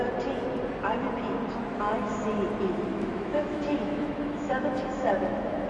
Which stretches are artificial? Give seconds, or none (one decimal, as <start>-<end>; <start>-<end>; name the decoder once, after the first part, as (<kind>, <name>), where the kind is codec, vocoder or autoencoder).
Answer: 2.9-5.7 (autoencoder, DAC-VAE)